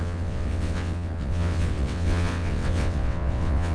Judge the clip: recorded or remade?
remade